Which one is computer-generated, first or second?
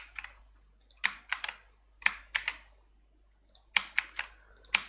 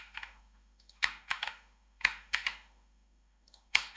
second